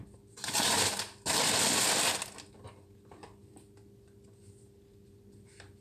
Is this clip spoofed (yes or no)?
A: no